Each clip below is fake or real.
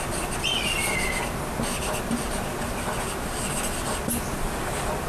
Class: real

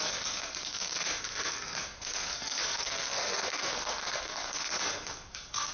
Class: fake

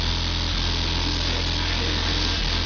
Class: real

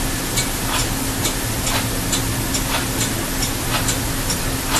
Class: real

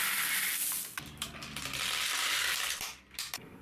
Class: real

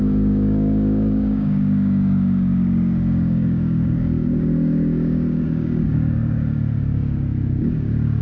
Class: fake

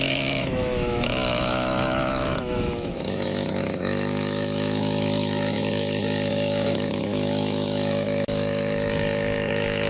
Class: fake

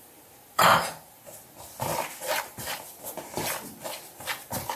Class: real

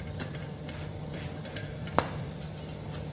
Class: fake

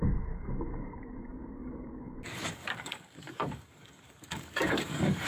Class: fake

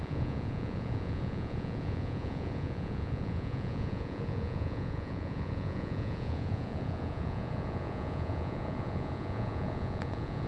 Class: fake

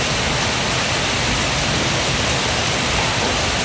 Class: real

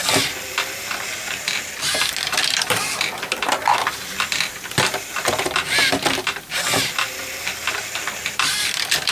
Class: fake